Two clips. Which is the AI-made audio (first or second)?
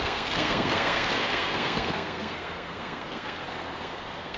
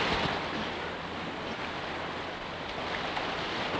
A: first